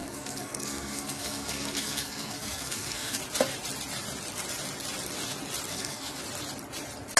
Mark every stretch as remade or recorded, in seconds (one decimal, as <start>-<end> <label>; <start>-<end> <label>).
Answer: 0.0-3.2 remade; 3.2-5.7 recorded; 5.7-6.2 remade; 6.2-7.2 recorded